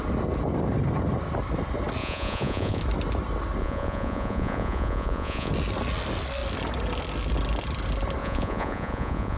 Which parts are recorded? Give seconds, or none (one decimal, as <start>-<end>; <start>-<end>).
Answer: 0.0-2.0; 2.8-3.6; 5.5-8.2